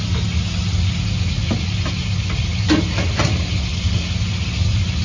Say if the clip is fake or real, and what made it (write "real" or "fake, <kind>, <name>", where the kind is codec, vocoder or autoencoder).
real